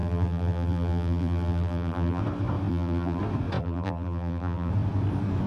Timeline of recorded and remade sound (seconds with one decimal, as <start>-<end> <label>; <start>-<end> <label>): 0.0-2.2 remade; 2.2-2.7 recorded; 2.7-3.2 remade; 3.2-3.6 recorded; 3.6-4.7 remade; 4.7-5.5 recorded